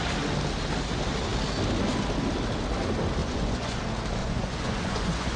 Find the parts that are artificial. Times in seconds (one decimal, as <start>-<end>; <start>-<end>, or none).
3.2-3.8; 4.2-5.4